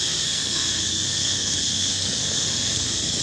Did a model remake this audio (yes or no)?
yes